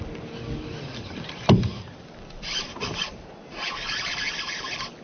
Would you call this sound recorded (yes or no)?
yes